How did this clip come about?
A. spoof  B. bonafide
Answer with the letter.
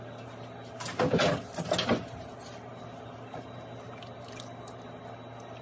B